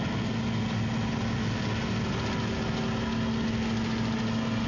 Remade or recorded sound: recorded